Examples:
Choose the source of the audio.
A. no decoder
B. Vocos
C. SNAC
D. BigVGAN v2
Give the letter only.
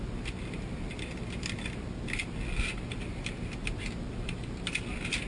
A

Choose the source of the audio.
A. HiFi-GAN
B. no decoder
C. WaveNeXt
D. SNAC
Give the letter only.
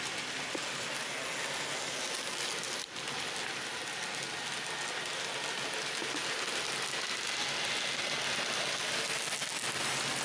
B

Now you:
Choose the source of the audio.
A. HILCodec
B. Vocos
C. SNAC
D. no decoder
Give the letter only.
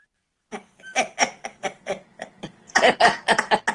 D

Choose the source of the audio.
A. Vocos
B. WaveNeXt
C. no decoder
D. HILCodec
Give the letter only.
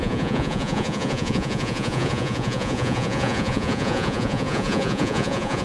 A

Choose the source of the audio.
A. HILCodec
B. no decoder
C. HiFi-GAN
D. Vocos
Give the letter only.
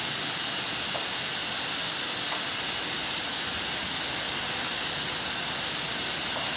B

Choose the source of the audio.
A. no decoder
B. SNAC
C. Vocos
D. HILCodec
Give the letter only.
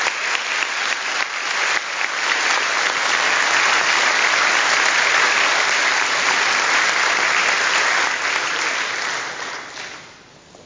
A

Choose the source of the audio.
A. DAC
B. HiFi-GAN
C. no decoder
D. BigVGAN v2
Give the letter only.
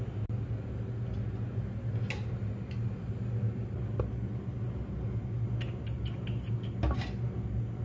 C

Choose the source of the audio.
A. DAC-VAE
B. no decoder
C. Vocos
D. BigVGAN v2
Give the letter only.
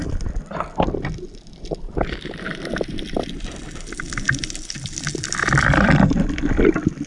D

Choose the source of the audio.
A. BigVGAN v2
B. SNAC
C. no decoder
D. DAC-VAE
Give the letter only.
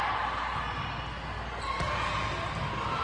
C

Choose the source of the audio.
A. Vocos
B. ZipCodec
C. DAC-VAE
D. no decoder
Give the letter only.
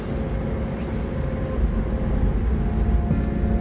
D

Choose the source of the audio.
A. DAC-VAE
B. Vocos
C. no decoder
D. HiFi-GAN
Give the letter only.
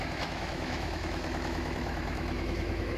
A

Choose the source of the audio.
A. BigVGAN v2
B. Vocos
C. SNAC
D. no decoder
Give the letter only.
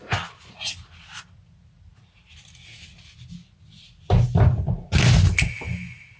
D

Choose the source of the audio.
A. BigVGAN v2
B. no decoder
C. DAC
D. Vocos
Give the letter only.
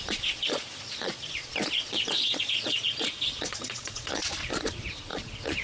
D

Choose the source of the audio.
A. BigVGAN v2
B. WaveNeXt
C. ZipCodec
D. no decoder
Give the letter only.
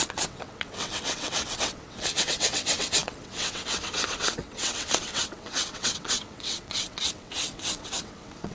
B